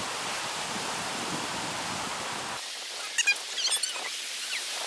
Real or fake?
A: real